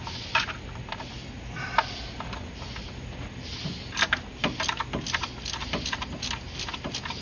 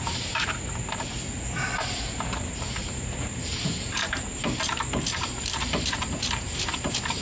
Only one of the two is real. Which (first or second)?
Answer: first